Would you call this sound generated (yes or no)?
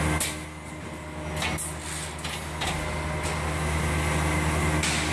no